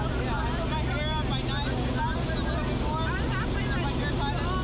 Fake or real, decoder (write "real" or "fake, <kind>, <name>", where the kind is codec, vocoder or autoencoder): real